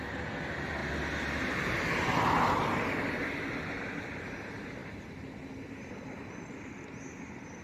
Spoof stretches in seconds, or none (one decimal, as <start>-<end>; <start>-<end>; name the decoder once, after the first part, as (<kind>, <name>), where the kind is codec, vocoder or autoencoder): none